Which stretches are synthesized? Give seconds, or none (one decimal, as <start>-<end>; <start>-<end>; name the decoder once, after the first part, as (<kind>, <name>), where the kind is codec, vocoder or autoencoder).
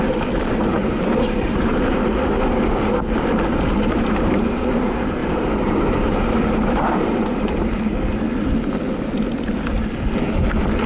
0.8-1.7 (vocoder, BigVGAN v2); 3.5-4.5; 5.2-7.8